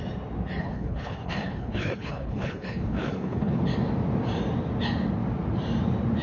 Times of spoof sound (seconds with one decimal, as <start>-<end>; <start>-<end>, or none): 0.6-3.6

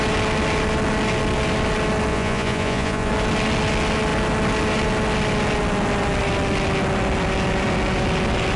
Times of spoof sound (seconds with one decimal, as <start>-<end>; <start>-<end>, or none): 2.1-3.1